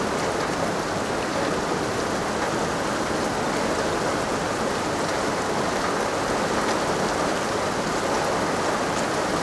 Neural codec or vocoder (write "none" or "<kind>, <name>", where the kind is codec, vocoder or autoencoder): none